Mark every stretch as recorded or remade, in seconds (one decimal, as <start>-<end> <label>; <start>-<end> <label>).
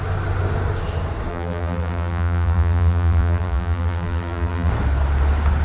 0.0-1.3 recorded; 1.3-4.7 remade; 4.7-5.6 recorded